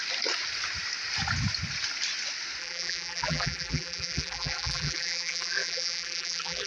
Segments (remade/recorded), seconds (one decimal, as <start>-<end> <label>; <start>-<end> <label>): 0.0-2.6 recorded; 2.6-6.7 remade